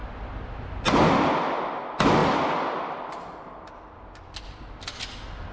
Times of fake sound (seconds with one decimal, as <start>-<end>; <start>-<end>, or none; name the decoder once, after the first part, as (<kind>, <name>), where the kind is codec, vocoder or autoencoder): none